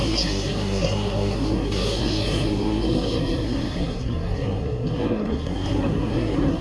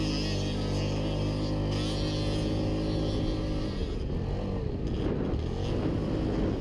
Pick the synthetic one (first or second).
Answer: first